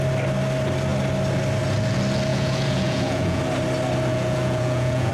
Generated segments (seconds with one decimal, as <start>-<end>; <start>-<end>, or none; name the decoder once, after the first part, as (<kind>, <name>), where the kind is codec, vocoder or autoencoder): 2.3-3.4 (vocoder, Vocos); 4.1-5.1